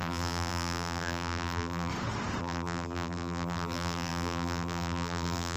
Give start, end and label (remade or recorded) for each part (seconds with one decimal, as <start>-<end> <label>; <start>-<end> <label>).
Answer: 0.0-1.9 remade; 1.9-2.4 recorded; 2.4-5.6 remade